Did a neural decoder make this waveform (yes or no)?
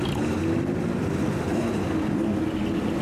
no